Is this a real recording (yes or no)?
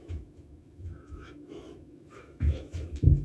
no